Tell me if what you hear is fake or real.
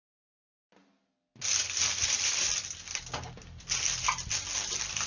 real